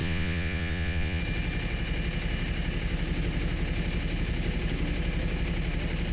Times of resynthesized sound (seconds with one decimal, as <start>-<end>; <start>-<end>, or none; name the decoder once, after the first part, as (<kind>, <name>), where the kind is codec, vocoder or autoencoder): 0.0-1.2 (vocoder, Vocos)